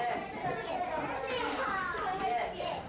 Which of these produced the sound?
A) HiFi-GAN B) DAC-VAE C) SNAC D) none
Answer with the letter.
D